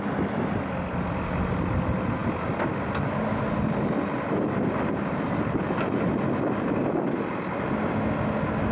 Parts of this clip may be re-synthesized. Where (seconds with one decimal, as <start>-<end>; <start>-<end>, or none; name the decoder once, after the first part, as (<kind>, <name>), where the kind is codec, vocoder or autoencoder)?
none